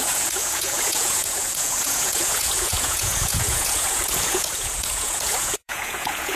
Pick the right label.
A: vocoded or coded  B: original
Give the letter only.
A